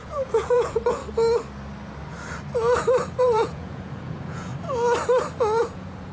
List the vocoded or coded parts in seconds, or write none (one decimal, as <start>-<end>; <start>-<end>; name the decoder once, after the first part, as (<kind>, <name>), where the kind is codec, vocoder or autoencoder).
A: 0.0-1.0 (vocoder, Vocos); 3.2-4.5; 5.6-6.1